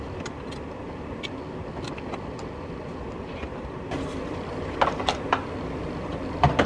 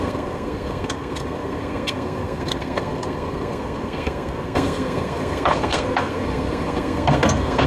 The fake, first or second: second